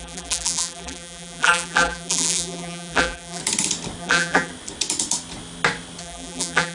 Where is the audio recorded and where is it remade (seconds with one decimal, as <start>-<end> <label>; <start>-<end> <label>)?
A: 0.0-3.4 remade; 3.4-4.0 recorded; 4.0-4.5 remade; 4.5-6.0 recorded; 6.0-6.7 remade

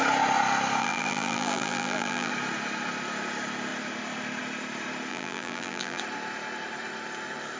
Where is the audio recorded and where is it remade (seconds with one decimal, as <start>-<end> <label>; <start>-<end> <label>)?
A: 0.0-0.8 recorded; 0.8-2.3 remade; 2.3-5.1 recorded; 5.1-6.0 remade; 6.0-7.6 recorded

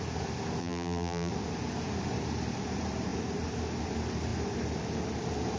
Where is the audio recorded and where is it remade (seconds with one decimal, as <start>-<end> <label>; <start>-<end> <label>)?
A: 0.0-0.6 recorded; 0.6-1.3 remade; 1.3-5.6 recorded

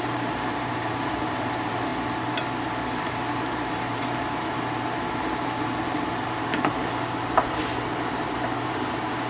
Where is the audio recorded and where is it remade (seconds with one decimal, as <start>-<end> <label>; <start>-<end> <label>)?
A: 0.0-1.9 remade; 1.9-3.0 recorded; 3.0-6.8 remade; 6.8-8.1 recorded; 8.1-9.3 remade